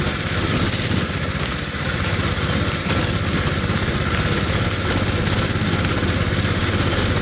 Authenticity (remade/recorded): recorded